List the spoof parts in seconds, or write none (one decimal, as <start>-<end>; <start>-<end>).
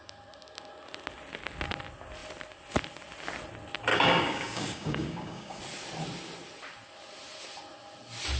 3.9-5.6